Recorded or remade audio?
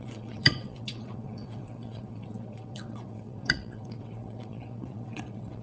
remade